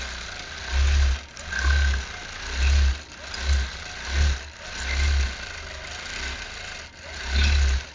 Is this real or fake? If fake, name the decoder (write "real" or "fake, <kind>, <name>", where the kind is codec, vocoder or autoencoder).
real